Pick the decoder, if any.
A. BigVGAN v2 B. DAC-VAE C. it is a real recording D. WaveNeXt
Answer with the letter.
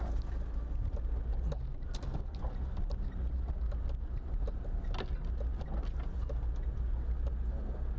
C